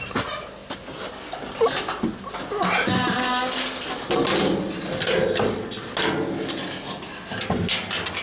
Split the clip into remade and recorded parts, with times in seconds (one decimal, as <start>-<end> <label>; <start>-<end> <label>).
0.0-8.2 recorded